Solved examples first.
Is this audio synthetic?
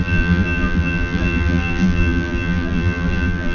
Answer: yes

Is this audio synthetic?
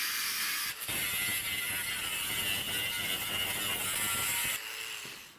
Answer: no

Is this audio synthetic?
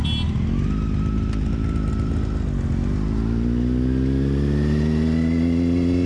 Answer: no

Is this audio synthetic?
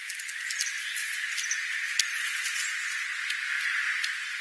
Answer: no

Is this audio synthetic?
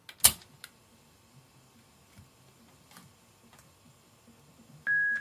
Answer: no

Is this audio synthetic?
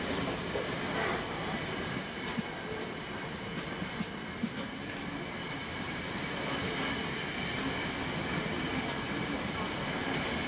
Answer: no